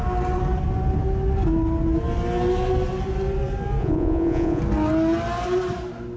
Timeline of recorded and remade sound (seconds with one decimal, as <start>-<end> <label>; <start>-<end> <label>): 0.0-3.8 recorded; 3.8-4.6 remade; 4.6-6.2 recorded

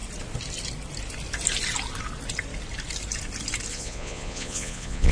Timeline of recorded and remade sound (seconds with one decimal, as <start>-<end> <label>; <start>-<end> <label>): 0.0-3.7 recorded; 3.7-5.1 remade

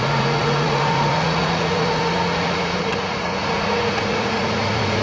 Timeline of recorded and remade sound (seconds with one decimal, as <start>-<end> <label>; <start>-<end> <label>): 0.0-5.0 remade

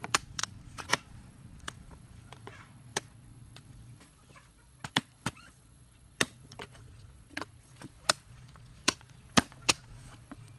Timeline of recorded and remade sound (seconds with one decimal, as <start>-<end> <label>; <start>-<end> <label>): 0.0-10.6 remade

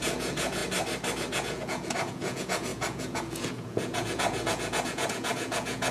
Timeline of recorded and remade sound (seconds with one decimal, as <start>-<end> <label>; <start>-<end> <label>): 0.0-0.6 remade; 0.6-1.3 recorded; 1.3-5.9 remade

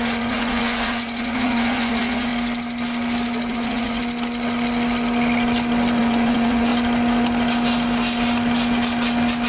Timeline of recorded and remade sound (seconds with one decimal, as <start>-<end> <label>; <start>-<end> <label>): 0.0-2.3 remade; 2.3-3.5 recorded; 3.5-4.0 remade; 4.0-6.0 recorded; 6.0-6.7 remade; 6.7-9.5 recorded

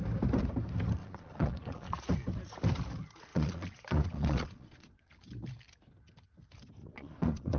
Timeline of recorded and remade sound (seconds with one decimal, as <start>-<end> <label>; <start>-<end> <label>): 0.0-1.0 recorded; 1.0-1.9 remade; 1.9-3.3 recorded; 3.3-5.1 remade; 5.1-6.8 recorded; 6.8-7.6 remade